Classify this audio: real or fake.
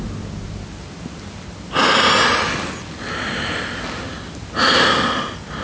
real